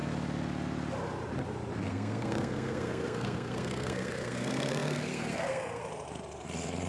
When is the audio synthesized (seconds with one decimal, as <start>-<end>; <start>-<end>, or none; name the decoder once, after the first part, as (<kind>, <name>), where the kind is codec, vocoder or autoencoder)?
1.9-5.8 (codec, SNAC)